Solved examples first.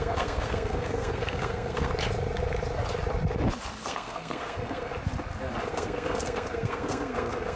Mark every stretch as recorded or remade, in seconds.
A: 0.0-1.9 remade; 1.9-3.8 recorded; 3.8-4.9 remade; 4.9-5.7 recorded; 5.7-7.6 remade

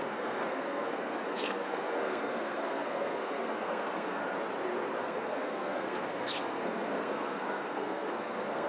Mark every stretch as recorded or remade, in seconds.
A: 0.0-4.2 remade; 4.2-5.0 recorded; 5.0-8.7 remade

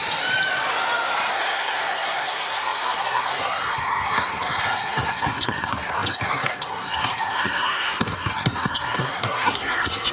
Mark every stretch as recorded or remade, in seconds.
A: 0.0-1.3 recorded; 1.3-10.1 remade